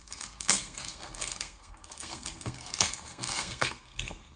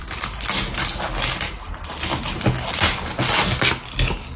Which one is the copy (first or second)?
first